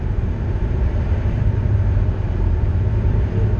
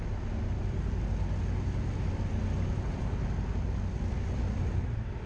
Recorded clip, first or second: second